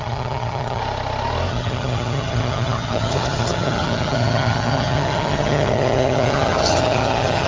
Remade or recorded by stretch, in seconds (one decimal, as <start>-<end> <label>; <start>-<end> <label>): 0.0-0.8 remade; 0.8-1.5 recorded; 1.5-7.5 remade